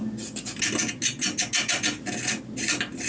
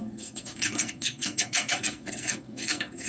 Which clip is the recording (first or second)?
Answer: first